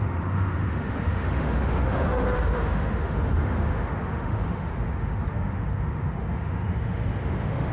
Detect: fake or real fake